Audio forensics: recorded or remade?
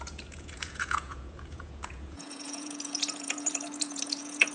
remade